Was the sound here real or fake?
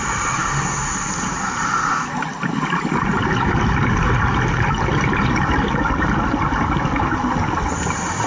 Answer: real